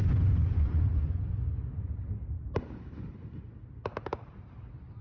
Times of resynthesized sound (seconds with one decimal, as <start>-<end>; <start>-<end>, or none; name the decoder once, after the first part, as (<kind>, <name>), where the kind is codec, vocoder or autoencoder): 0.0-1.2 (vocoder, Vocos)